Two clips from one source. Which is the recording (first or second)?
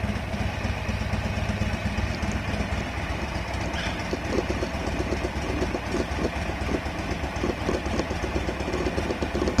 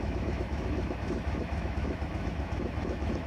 first